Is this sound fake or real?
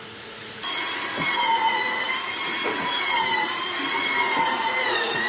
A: fake